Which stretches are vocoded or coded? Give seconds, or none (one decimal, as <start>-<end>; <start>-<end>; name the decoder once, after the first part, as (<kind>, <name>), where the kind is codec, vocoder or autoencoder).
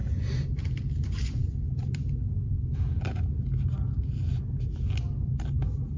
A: 0.0-0.7 (vocoder, BigVGAN v2)